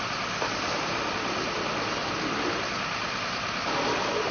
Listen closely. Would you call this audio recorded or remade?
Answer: recorded